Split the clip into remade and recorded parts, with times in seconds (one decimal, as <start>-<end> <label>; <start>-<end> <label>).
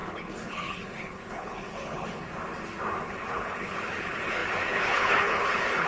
0.0-2.3 remade; 2.3-3.0 recorded; 3.0-5.9 remade